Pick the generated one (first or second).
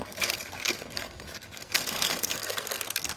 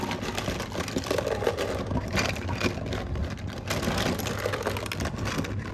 first